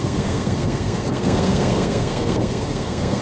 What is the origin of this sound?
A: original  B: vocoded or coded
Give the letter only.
B